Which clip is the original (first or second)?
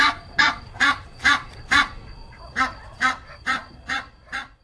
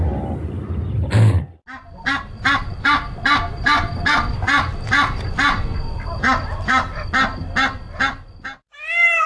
second